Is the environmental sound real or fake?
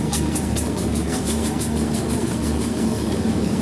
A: fake